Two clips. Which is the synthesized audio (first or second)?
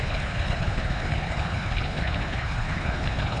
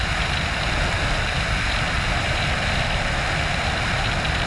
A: first